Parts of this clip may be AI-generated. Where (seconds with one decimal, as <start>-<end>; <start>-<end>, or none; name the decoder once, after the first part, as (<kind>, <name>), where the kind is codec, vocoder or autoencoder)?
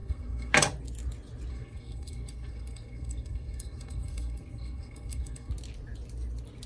0.0-0.5 (codec, SNAC); 1.5-5.5